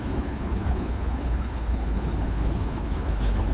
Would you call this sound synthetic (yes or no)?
yes